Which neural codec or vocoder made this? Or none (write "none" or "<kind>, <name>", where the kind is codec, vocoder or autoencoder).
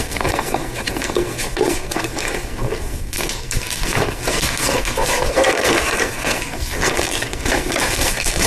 codec, SNAC